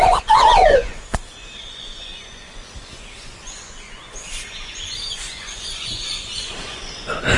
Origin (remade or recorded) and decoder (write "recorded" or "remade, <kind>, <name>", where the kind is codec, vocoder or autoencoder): remade, vocoder, Vocos